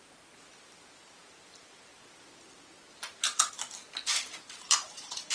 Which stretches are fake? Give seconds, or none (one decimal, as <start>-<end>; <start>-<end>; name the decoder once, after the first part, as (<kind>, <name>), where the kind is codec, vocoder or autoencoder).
4.8-5.3 (vocoder, Vocos)